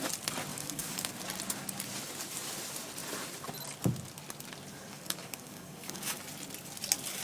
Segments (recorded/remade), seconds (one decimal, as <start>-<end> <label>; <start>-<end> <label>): 0.0-0.5 recorded; 0.5-1.1 remade; 1.1-4.7 recorded; 4.7-6.2 remade; 6.2-7.2 recorded

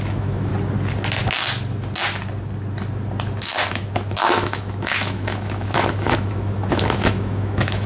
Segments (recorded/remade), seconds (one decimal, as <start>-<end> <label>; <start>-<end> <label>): 0.0-0.5 remade; 0.5-3.7 recorded; 3.7-7.9 remade

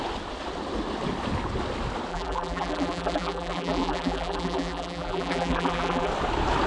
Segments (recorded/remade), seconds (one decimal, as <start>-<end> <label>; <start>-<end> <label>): 0.0-2.1 recorded; 2.1-6.1 remade; 6.1-6.7 recorded

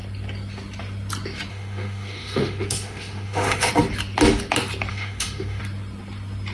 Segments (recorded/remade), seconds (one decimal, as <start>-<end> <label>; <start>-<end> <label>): 0.0-1.5 recorded; 1.5-3.7 remade; 3.7-4.9 recorded; 4.9-5.6 remade; 5.6-6.5 recorded

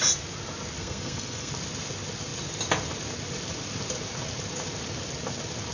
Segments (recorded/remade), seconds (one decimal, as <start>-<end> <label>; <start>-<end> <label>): 0.0-0.8 recorded; 0.8-1.5 remade; 1.5-5.7 recorded

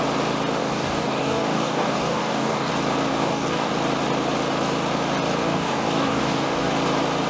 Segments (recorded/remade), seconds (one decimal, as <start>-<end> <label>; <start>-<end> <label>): 0.0-0.6 recorded; 0.6-2.7 remade; 2.7-3.1 recorded; 3.1-3.7 remade; 3.7-5.4 recorded; 5.4-6.7 remade; 6.7-7.3 recorded

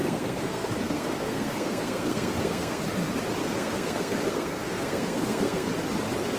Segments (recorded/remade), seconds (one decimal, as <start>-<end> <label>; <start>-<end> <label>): 0.0-2.8 remade; 2.8-3.4 recorded; 3.4-5.7 remade; 5.7-6.4 recorded